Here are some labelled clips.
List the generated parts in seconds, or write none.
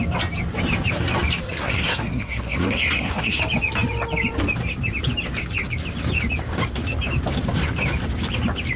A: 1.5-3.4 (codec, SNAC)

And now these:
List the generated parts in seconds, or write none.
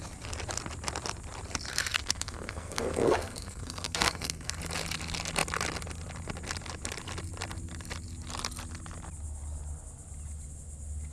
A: 1.7-4.6 (codec, SNAC)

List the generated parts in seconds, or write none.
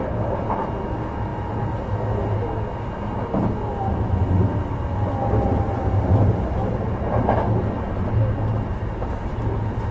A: none